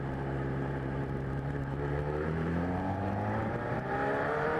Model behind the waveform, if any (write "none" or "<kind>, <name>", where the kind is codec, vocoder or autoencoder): vocoder, BigVGAN v2